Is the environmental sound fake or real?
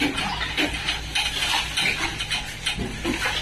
real